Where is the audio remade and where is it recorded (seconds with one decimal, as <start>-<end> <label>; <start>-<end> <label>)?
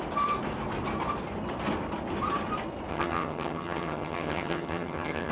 0.0-2.9 recorded; 2.9-5.3 remade